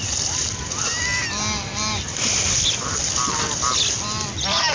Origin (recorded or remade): recorded